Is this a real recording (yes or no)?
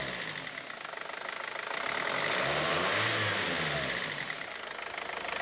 yes